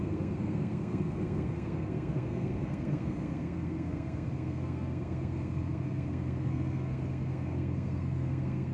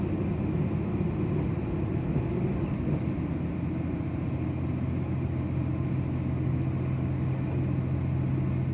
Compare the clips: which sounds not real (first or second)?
first